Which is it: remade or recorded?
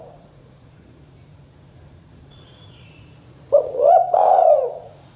remade